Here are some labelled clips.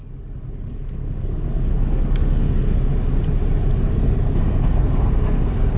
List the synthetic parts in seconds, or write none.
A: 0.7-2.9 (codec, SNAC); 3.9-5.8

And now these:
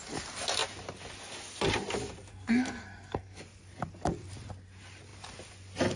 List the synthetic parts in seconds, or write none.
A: 2.3-3.4 (codec, SNAC)

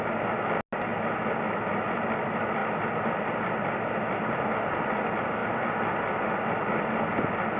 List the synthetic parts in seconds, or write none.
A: none

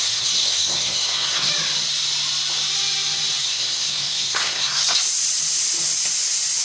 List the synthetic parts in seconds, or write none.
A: 0.0-1.5 (codec, SNAC); 3.4-4.8

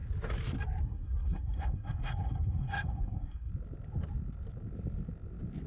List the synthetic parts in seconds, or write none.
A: 0.8-3.5 (codec, SNAC)